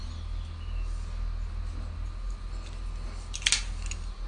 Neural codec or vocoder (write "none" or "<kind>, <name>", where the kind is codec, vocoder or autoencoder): none